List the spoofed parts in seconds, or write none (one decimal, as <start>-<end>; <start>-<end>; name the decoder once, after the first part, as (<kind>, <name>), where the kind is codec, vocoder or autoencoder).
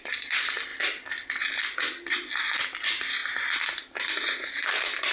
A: none